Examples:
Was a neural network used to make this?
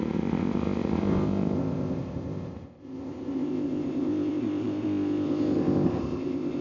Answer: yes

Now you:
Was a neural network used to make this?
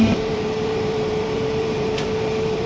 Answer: yes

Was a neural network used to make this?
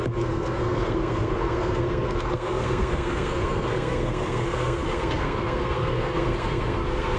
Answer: yes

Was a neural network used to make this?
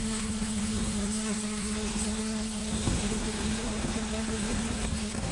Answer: yes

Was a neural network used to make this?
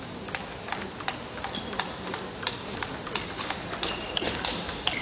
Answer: no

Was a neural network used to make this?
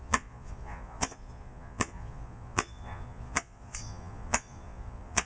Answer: yes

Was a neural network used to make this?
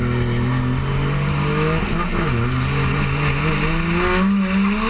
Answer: no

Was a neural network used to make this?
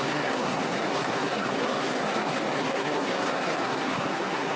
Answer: yes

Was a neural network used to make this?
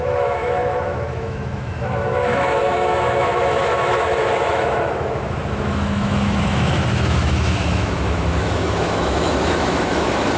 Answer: yes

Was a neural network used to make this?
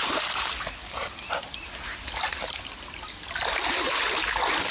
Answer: no